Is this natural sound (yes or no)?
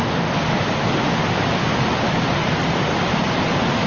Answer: yes